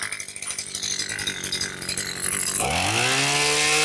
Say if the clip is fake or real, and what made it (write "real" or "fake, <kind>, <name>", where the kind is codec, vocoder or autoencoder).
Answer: real